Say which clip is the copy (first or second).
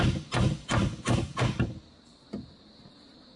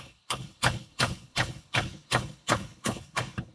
second